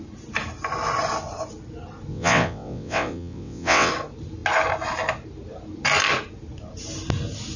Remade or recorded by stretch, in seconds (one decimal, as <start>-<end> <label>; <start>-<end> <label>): 0.0-2.1 recorded; 2.1-3.9 remade; 3.9-7.6 recorded